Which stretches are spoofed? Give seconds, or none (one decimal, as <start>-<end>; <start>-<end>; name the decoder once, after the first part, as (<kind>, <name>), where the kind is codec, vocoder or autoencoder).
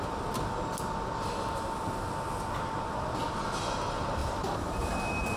4.2-4.9 (vocoder, BigVGAN v2)